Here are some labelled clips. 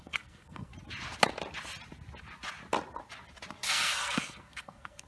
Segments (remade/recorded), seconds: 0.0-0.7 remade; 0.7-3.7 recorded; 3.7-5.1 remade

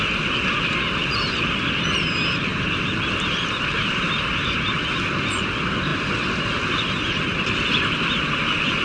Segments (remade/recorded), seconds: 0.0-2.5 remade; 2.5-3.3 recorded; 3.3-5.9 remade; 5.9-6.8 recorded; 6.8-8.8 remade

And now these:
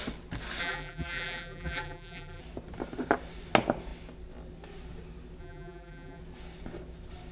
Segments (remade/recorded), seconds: 0.0-0.6 recorded; 0.6-2.4 remade; 2.4-5.4 recorded; 5.4-6.2 remade; 6.2-7.3 recorded

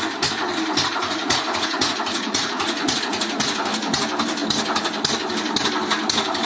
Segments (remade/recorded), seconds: 0.0-0.9 recorded; 0.9-3.4 remade; 3.4-6.5 recorded

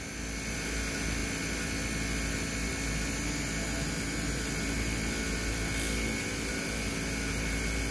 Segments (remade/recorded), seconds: 0.0-7.9 recorded

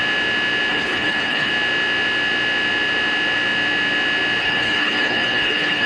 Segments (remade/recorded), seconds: 0.0-0.7 recorded; 0.7-1.5 remade; 1.5-4.4 recorded; 4.4-5.9 remade

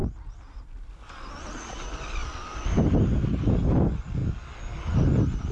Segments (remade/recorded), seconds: 0.0-5.5 recorded